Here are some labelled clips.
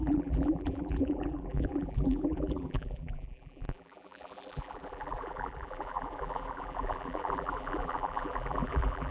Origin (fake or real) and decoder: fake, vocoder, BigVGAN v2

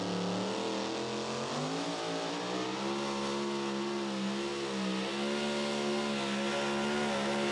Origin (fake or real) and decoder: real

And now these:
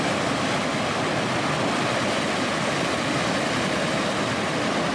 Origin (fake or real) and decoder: real